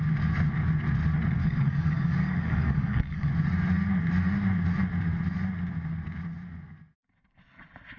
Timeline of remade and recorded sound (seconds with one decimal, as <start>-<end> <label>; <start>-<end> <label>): 0.0-1.4 recorded; 1.4-3.3 remade; 3.3-8.0 recorded